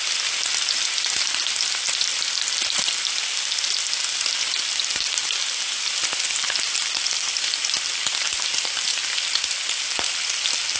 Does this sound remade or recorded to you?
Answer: recorded